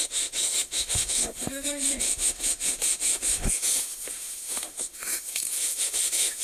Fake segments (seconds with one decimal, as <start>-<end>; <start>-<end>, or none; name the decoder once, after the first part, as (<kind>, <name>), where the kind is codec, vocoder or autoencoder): 0.0-6.4 (autoencoder, DAC-VAE)